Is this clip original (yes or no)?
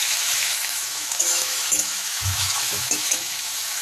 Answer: no